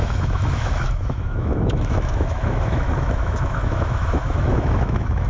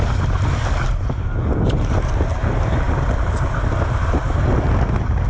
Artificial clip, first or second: first